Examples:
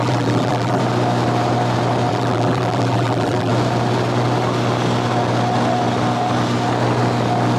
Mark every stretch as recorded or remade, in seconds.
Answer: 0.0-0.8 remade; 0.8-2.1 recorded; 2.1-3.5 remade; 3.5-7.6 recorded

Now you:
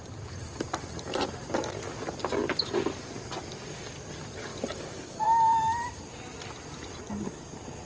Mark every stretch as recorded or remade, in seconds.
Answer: 0.0-1.2 remade; 1.2-4.5 recorded; 4.5-6.0 remade; 6.0-7.9 recorded

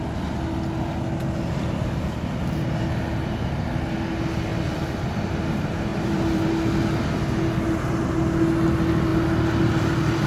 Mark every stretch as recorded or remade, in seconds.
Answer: 0.0-5.9 recorded; 5.9-6.5 remade; 6.5-10.3 recorded

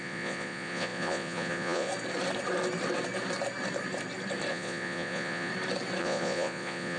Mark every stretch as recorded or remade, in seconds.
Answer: 0.0-1.9 remade; 1.9-4.5 recorded; 4.5-5.5 remade; 5.5-6.0 recorded; 6.0-7.0 remade